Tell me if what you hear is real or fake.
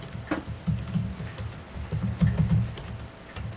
real